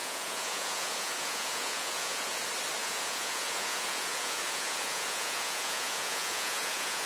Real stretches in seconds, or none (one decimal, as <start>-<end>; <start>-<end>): 2.4-2.8